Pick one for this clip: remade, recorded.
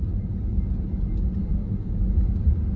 recorded